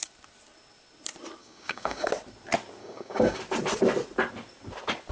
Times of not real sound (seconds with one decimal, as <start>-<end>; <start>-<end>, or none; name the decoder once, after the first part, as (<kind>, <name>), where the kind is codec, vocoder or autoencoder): 1.4-2.1 (codec, DAC); 2.8-3.4